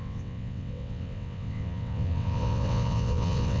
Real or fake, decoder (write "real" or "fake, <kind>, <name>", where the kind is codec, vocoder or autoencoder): fake, vocoder, WaveNeXt